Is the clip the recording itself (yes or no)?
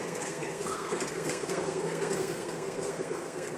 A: no